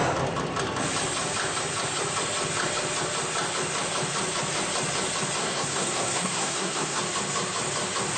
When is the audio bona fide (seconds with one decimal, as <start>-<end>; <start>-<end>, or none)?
0.0-5.4; 7.0-8.2